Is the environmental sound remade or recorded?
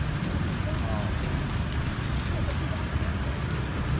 recorded